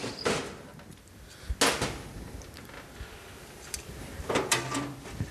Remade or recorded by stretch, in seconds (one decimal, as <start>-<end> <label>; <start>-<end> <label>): 0.0-0.7 remade; 0.7-3.9 recorded; 3.9-5.3 remade